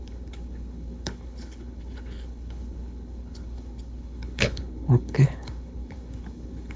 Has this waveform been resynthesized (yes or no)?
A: yes